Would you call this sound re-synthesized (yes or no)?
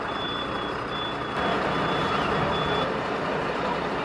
no